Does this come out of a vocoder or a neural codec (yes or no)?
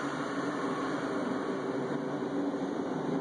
no